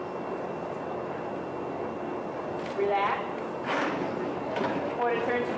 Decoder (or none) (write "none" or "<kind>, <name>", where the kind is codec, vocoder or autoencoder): none